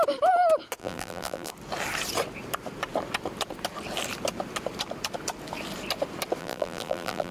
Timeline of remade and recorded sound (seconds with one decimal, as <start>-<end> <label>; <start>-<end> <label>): 0.0-0.8 recorded; 0.8-1.5 remade; 1.5-6.4 recorded; 6.4-7.3 remade